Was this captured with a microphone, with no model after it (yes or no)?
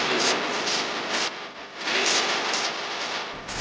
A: yes